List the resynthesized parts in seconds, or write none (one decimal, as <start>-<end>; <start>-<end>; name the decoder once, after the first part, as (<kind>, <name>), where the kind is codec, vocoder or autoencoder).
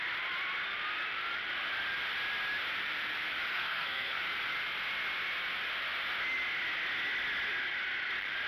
3.5-4.2 (codec, SNAC)